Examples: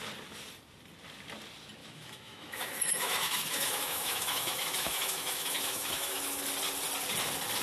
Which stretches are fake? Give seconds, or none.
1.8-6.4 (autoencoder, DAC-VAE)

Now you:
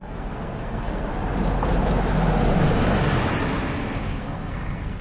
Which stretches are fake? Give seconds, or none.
0.0-1.1 (codec, SNAC); 4.0-5.0

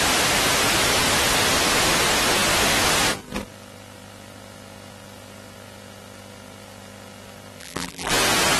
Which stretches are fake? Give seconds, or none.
7.6-8.1 (vocoder, BigVGAN v2)

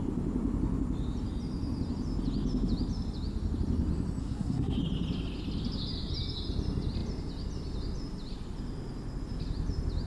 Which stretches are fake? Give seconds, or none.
4.2-4.8 (codec, SNAC)